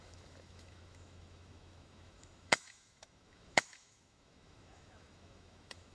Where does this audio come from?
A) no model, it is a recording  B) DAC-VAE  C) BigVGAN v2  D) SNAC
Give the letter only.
B